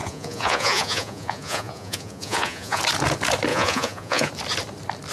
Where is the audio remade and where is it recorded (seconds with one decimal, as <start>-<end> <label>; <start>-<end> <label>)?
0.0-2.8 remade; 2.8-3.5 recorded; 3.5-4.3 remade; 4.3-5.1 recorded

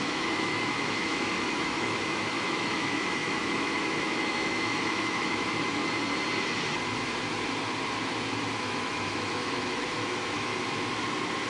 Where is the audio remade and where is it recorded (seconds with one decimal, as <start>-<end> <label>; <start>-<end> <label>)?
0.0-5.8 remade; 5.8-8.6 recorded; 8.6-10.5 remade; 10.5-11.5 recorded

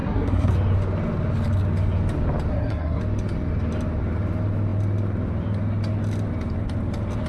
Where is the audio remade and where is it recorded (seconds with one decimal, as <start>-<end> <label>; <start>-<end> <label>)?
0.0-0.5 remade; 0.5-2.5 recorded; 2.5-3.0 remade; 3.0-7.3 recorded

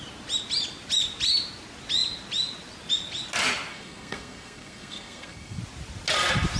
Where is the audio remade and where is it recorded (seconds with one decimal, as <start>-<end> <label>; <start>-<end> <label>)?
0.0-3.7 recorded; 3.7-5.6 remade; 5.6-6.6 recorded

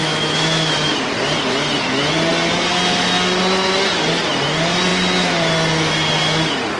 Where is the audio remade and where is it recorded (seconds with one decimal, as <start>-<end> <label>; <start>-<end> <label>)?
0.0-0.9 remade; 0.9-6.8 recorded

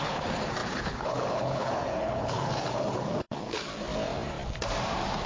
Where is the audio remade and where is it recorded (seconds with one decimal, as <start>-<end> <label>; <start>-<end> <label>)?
0.0-3.7 remade; 3.7-5.3 recorded

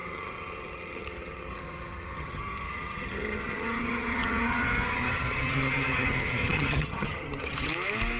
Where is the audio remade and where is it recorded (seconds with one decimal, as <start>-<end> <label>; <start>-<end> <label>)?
0.0-7.7 remade; 7.7-8.2 recorded